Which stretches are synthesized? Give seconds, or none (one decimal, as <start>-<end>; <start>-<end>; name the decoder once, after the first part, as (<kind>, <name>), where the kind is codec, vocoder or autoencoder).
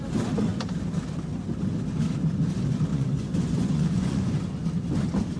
2.9-4.3 (vocoder, Vocos)